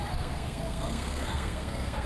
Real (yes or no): no